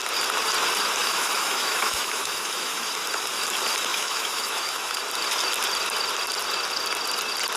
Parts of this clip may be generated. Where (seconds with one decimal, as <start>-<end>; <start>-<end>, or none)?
1.0-2.9; 3.9-5.0